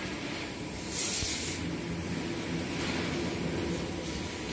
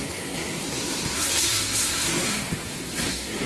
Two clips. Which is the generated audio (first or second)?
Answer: second